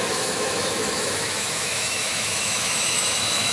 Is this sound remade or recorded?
remade